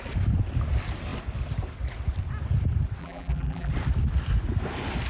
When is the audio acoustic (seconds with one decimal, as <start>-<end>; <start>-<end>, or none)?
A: 0.0-3.0; 3.7-5.1